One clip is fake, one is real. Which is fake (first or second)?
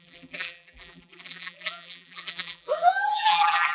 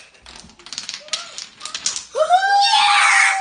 first